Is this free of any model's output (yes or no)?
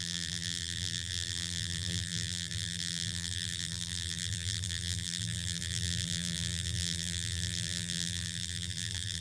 no